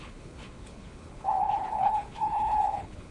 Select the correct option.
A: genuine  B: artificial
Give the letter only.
B